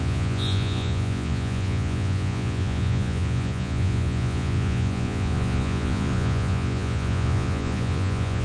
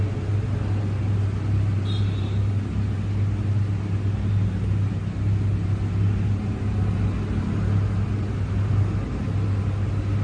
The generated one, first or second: first